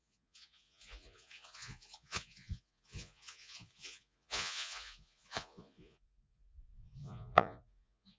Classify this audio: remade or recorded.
remade